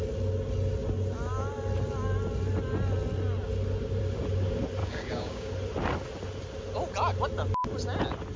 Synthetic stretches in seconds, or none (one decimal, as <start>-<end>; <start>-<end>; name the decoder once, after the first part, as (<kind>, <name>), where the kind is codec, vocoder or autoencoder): 4.8-5.5 (codec, DAC)